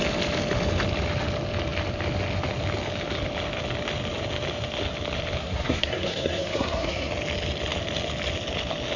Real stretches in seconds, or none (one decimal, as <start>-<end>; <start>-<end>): 0.0-5.4; 7.1-9.0